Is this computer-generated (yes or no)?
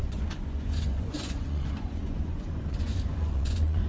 yes